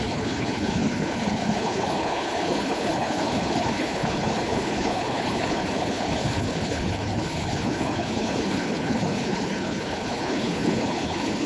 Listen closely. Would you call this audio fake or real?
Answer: fake